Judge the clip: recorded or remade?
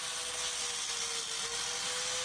recorded